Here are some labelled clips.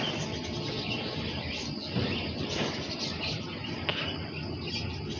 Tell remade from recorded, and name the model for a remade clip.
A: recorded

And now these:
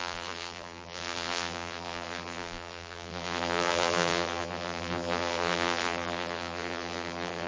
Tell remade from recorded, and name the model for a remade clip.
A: remade, vocoder, BigVGAN v2